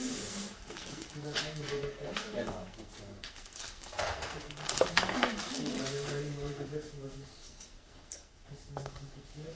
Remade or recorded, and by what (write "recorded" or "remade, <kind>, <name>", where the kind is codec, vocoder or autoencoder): remade, codec, SNAC